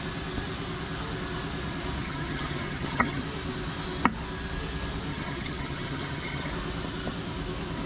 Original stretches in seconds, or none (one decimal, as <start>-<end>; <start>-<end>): 0.0-2.0; 3.2-5.1; 6.5-7.9